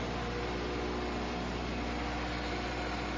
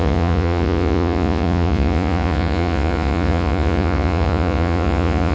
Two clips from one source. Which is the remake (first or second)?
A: second